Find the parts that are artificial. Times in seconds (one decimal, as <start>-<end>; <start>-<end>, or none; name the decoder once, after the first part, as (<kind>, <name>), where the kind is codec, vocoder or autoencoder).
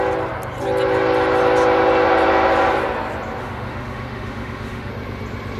3.4-4.9 (autoencoder, DAC-VAE)